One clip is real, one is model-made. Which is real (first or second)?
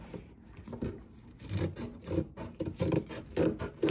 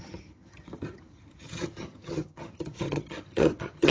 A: first